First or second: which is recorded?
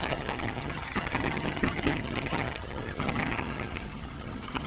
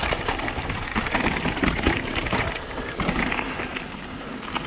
second